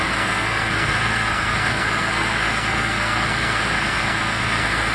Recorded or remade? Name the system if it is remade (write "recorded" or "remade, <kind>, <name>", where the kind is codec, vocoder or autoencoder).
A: remade, codec, SNAC